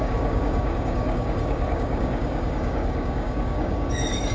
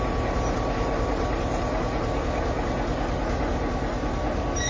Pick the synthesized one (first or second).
first